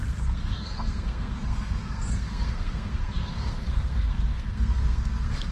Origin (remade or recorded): remade